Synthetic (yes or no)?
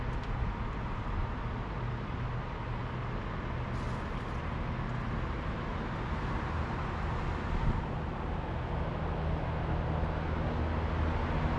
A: no